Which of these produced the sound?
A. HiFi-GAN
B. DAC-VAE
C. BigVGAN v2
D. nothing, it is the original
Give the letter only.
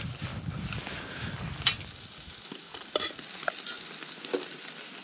D